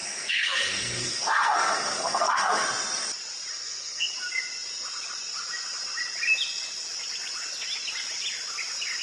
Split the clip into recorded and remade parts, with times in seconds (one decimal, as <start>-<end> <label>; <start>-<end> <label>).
0.0-2.6 remade; 2.6-3.5 recorded; 3.5-4.1 remade; 4.1-9.0 recorded